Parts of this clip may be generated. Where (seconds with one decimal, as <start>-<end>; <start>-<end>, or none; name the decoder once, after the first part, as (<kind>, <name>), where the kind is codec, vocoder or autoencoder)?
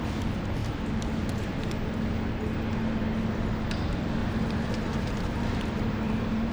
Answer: 4.2-6.5 (vocoder, BigVGAN v2)